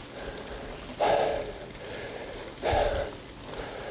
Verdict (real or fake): real